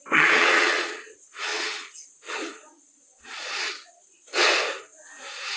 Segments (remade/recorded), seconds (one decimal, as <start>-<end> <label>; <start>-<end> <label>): 0.0-4.5 remade; 4.5-5.6 recorded